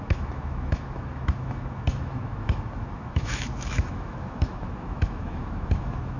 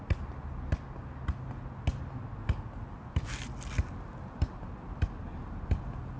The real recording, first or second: second